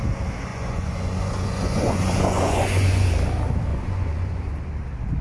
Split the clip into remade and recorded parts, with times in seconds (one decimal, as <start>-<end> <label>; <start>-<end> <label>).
0.0-0.5 recorded; 0.5-3.1 remade; 3.1-3.7 recorded; 3.7-4.6 remade; 4.6-5.2 recorded